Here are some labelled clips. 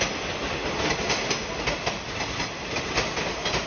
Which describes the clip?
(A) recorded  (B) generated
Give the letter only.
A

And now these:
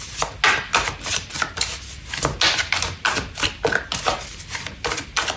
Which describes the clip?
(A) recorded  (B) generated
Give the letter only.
A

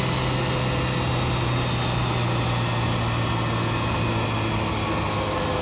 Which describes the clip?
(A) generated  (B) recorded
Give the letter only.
B